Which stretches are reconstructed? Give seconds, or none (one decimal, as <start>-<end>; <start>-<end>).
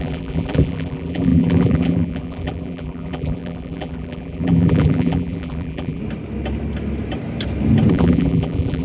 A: 0.0-6.0; 7.9-8.8